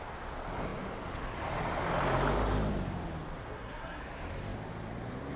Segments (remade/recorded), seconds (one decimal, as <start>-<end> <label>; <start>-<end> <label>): 0.0-3.5 recorded; 3.5-4.0 remade; 4.0-5.4 recorded